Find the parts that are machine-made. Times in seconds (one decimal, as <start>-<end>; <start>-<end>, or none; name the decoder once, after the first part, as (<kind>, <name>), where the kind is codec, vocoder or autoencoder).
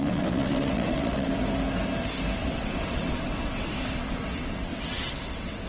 0.0-1.3 (vocoder, WaveNeXt); 2.4-5.7